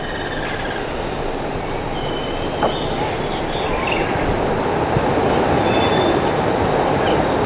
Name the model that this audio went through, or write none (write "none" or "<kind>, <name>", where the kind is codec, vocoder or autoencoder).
none